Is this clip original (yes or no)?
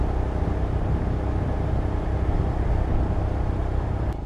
yes